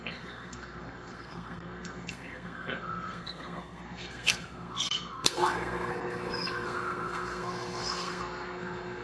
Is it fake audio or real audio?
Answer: fake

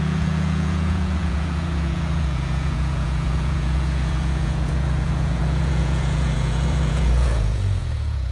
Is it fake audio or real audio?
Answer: fake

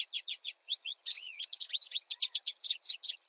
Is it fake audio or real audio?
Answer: fake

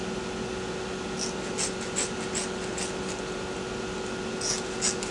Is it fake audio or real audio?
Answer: real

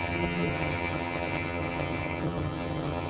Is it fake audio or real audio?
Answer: fake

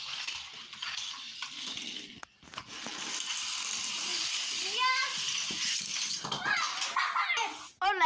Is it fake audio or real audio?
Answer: real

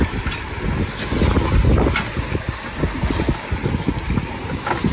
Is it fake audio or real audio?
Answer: real